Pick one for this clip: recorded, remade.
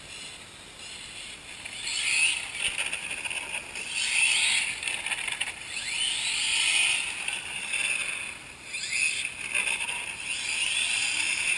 recorded